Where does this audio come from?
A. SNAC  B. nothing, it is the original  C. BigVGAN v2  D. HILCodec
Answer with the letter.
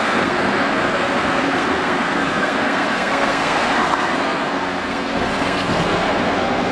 A